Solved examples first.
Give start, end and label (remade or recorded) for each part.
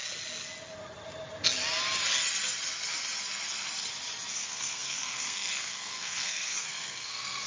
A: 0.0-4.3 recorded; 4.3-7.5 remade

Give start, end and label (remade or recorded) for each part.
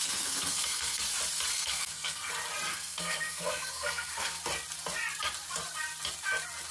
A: 0.0-1.0 remade; 1.0-1.5 recorded; 1.5-2.3 remade; 2.3-2.7 recorded; 2.7-4.4 remade; 4.4-6.7 recorded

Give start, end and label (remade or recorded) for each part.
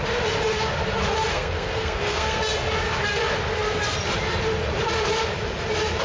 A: 0.0-1.3 recorded; 1.3-2.4 remade; 2.4-6.0 recorded